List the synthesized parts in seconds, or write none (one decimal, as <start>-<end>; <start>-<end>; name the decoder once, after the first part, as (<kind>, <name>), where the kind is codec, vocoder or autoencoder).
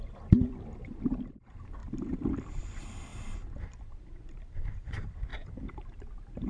0.0-1.8 (vocoder, BigVGAN v2); 2.6-5.3